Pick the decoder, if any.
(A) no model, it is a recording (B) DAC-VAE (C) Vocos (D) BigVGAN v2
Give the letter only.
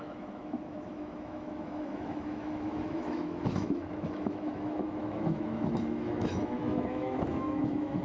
B